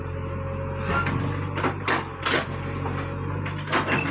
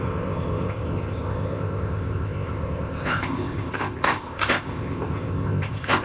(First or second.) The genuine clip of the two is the first